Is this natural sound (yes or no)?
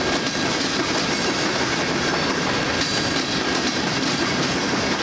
yes